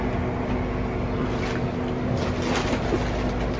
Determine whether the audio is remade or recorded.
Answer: recorded